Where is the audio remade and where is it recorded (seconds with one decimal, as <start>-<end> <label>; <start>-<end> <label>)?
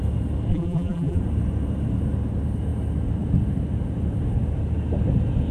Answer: 0.0-0.5 recorded; 0.5-1.2 remade; 1.2-5.5 recorded